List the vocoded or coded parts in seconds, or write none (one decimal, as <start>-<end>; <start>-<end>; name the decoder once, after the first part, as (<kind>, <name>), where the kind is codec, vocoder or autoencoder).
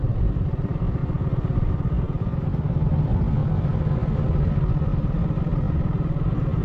0.0-0.6 (vocoder, BigVGAN v2); 1.0-2.4